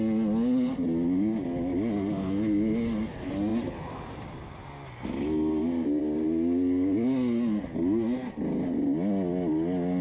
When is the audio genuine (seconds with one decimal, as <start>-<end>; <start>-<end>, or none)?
0.0-10.0